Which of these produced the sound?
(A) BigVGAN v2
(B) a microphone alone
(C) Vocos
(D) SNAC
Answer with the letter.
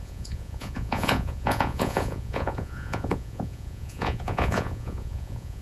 C